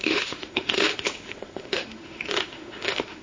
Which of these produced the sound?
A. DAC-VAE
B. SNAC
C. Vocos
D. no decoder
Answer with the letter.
A